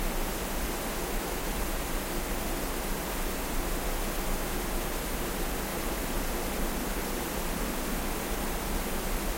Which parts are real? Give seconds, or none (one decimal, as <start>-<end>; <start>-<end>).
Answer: 0.0-0.9; 1.5-9.4